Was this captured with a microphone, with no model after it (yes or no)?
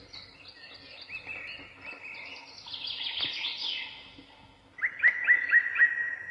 yes